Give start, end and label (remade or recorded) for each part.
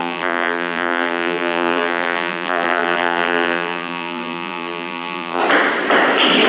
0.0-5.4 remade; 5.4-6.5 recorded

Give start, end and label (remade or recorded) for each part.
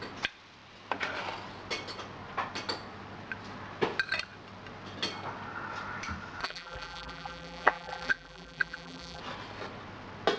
0.0-6.4 recorded; 6.4-9.2 remade; 9.2-10.4 recorded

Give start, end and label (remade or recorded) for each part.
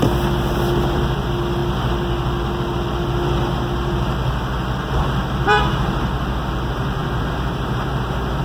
0.0-8.4 remade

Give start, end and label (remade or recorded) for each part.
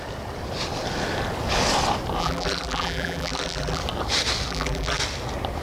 0.0-2.2 recorded; 2.2-3.8 remade; 3.8-4.5 recorded; 4.5-5.0 remade; 5.0-5.6 recorded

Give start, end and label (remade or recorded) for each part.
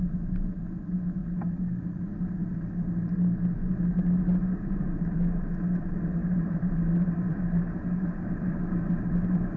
0.0-6.2 recorded; 6.2-8.9 remade; 8.9-9.6 recorded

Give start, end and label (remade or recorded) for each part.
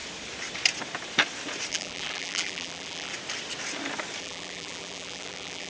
0.0-1.7 recorded; 1.7-3.1 remade; 3.1-4.2 recorded; 4.2-5.7 remade